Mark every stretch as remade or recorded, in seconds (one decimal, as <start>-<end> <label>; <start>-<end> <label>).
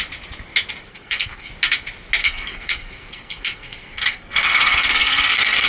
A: 0.0-0.9 recorded; 0.9-1.5 remade; 1.5-2.2 recorded; 2.2-5.7 remade